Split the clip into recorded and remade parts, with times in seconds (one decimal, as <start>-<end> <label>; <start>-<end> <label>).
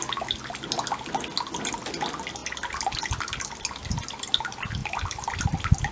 0.0-4.8 recorded; 4.8-5.3 remade; 5.3-5.9 recorded